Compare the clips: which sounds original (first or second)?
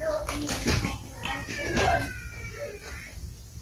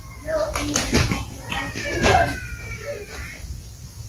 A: first